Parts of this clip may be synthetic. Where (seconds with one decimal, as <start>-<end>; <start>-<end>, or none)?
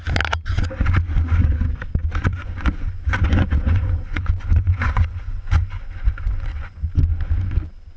2.3-7.0